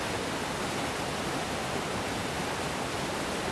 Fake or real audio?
real